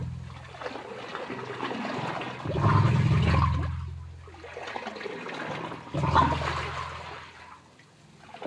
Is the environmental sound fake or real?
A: real